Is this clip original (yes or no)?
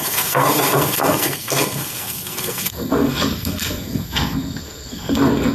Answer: no